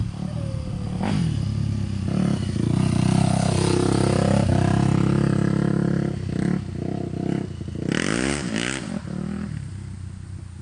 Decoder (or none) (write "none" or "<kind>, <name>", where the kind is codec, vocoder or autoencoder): none